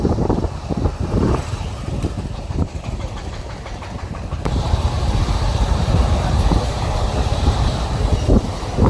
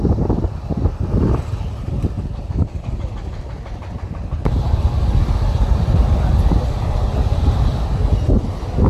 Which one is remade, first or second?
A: first